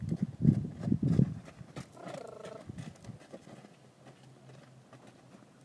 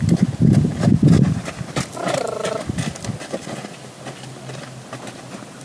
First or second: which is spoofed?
second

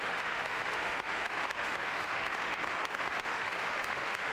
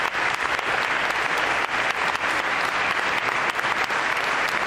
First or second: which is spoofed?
first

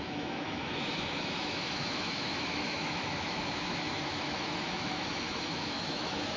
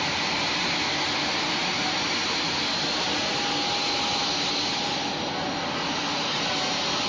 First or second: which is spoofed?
first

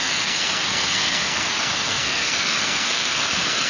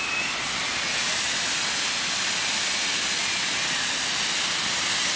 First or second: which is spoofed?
first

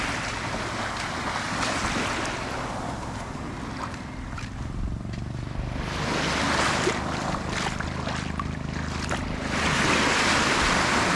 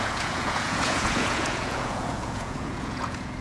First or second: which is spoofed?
second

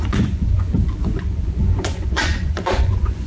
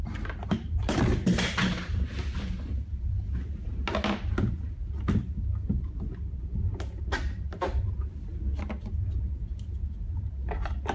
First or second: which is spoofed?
first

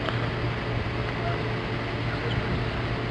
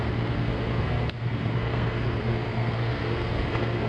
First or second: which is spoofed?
second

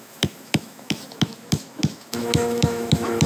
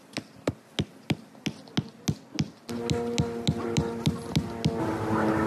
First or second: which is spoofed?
first